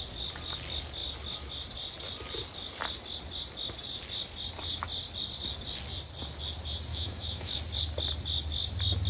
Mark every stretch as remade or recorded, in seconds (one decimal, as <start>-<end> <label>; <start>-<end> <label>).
0.0-6.9 recorded; 6.9-7.6 remade; 7.6-9.1 recorded